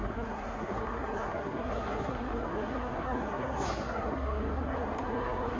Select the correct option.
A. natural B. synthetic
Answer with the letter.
B